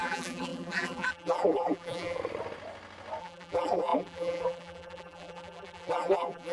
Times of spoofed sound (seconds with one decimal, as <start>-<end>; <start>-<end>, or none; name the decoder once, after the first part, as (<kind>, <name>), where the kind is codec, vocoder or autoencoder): 0.0-2.2 (vocoder, BigVGAN v2); 3.2-6.5